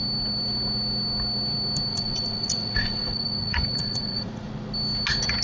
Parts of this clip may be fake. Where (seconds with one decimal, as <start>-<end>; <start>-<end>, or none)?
1.9-4.5